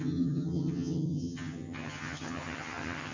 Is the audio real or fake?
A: fake